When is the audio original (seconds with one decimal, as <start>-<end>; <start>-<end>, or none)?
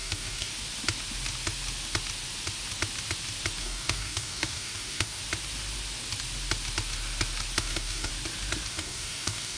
0.5-3.6; 5.2-7.6; 8.1-8.7